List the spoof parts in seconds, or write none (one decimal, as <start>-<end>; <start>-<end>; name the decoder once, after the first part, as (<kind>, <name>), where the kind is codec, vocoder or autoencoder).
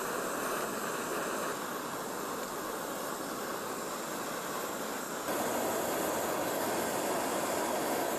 none